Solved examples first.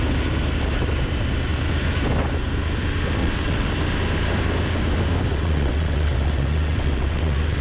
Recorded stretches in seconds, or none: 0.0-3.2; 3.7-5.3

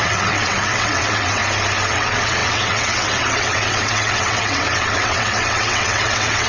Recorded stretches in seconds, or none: 1.4-1.9

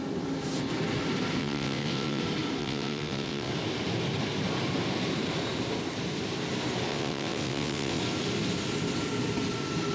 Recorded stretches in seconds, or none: 0.0-1.4; 2.2-2.6; 3.5-6.9; 8.0-9.9

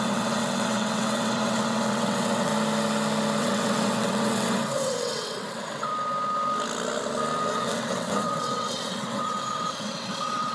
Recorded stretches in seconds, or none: 2.5-3.4; 5.9-7.5